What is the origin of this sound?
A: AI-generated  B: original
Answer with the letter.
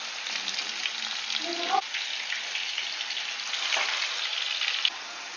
B